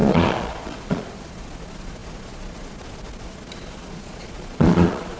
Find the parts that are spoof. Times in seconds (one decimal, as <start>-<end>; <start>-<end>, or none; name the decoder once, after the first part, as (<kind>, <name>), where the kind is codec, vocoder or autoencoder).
0.0-5.2 (vocoder, Vocos)